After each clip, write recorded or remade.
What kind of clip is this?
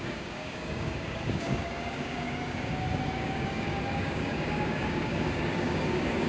remade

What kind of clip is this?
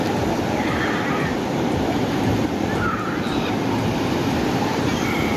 remade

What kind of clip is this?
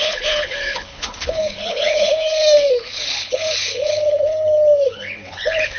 remade